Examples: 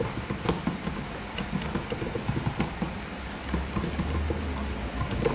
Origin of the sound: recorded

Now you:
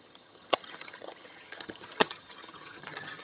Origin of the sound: remade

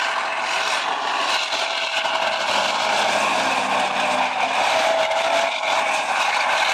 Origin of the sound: recorded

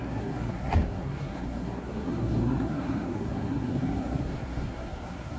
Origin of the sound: remade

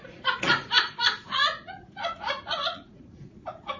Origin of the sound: remade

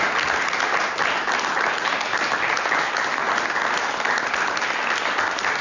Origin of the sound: recorded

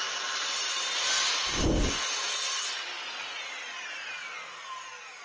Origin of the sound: recorded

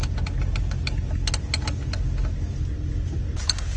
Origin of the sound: recorded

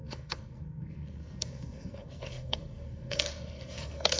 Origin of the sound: remade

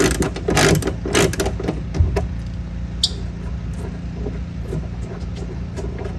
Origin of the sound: recorded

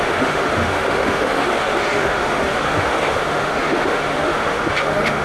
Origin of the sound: remade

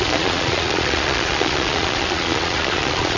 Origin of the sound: remade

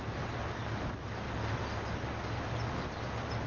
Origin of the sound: recorded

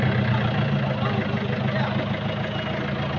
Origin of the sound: recorded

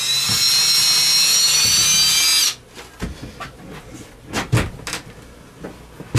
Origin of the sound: recorded